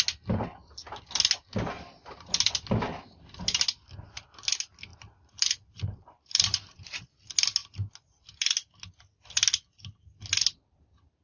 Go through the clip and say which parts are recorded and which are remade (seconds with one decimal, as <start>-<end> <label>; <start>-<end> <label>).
0.0-4.9 recorded; 4.9-6.8 remade; 6.8-11.2 recorded

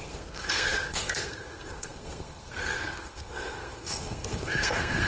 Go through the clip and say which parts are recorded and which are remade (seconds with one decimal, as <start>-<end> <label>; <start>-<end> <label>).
0.0-5.1 remade